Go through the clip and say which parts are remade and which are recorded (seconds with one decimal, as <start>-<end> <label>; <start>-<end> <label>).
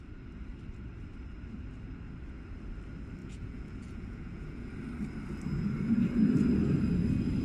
0.0-3.2 recorded; 3.2-4.7 remade; 4.7-7.4 recorded